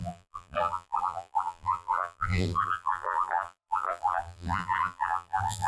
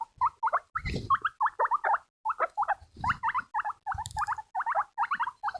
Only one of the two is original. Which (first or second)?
second